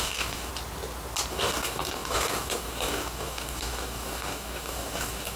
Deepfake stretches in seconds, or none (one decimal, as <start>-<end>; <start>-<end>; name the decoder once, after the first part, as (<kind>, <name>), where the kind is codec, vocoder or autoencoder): 0.0-0.5 (codec, DAC); 1.3-5.4